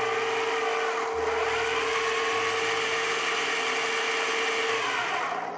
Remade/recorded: recorded